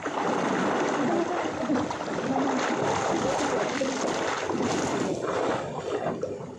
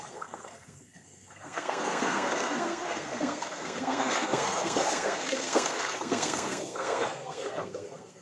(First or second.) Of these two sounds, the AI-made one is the second